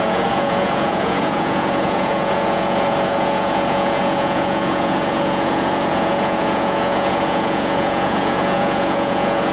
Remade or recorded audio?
remade